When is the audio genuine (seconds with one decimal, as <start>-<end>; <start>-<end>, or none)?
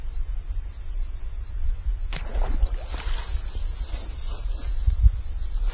0.0-5.7